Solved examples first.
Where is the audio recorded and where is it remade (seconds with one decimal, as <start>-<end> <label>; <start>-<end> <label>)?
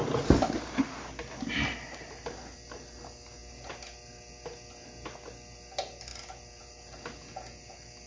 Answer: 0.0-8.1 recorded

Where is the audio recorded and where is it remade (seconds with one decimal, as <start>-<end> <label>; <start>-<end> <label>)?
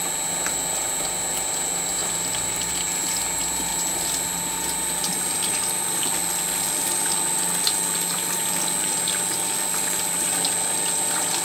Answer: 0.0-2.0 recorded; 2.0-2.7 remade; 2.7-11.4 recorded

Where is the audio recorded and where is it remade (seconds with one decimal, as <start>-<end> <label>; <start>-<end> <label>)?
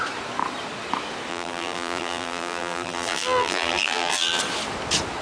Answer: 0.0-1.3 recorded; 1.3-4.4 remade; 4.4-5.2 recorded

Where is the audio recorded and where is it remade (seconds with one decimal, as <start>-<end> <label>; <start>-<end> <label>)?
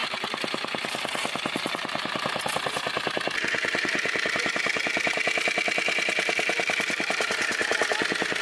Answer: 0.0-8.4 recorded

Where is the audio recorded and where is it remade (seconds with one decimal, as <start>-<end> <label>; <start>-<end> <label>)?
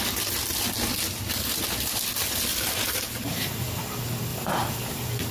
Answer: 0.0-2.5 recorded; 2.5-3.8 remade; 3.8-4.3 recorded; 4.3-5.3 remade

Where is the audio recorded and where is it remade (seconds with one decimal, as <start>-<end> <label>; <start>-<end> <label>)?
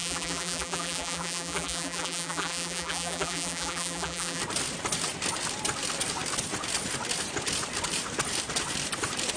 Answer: 0.0-4.4 remade; 4.4-9.4 recorded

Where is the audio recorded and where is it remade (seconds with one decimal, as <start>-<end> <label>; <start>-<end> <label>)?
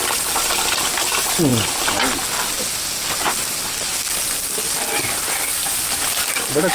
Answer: 0.0-5.5 recorded; 5.5-6.1 remade; 6.1-6.7 recorded